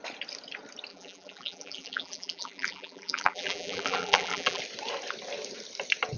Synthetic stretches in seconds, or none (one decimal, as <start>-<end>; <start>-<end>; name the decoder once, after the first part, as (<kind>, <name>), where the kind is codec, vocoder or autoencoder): 0.9-4.6 (vocoder, BigVGAN v2)